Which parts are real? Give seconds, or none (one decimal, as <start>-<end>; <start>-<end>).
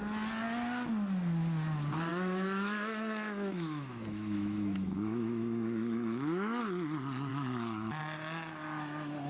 0.0-2.1; 6.6-7.3; 8.0-9.3